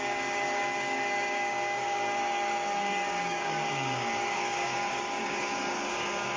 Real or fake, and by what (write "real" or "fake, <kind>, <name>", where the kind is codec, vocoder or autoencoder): fake, codec, DAC